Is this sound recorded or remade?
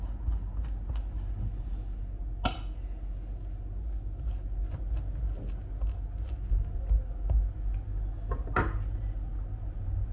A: recorded